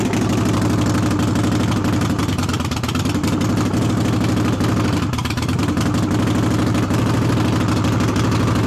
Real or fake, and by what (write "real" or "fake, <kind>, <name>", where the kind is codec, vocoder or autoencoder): real